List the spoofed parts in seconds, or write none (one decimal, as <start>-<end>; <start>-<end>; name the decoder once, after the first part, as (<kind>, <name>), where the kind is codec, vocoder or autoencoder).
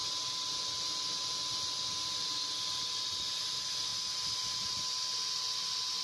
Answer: none